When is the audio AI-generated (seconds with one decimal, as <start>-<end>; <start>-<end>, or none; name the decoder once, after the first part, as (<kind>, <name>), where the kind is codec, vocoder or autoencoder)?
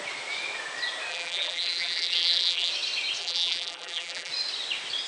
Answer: 1.1-2.7 (vocoder, BigVGAN v2); 3.2-4.3